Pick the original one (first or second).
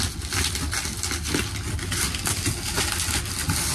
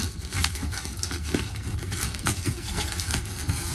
first